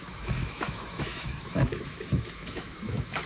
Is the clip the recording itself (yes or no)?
no